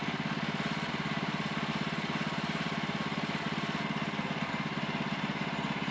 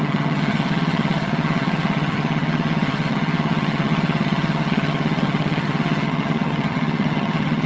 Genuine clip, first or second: first